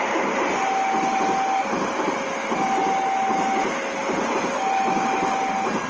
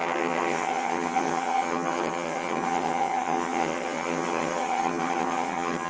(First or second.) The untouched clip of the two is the first